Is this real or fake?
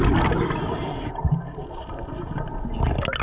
real